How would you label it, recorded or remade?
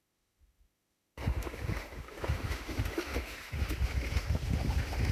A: remade